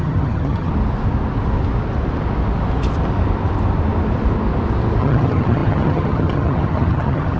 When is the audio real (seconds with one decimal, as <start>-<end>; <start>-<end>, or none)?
0.7-5.0